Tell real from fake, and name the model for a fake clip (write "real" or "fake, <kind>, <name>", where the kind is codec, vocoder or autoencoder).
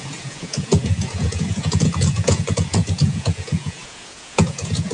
fake, vocoder, Vocos